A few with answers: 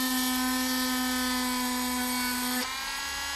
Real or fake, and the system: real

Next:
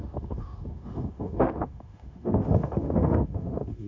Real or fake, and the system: fake, autoencoder, DAC-VAE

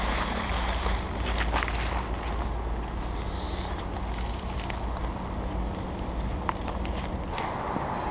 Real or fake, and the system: real